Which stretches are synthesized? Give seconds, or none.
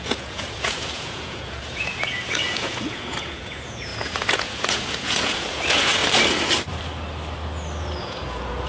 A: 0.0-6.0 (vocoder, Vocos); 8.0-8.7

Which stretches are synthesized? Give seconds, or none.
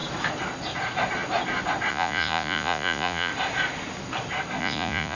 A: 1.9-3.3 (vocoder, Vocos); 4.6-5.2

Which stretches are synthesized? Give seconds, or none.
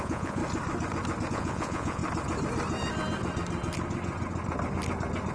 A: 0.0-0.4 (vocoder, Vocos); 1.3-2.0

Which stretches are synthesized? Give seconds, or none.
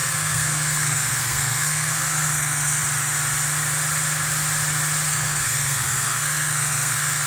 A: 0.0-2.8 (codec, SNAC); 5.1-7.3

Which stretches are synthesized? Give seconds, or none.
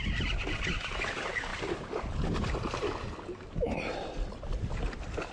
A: none